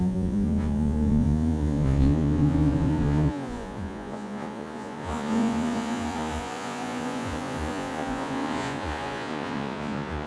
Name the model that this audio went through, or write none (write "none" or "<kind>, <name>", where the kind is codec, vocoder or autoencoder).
vocoder, Vocos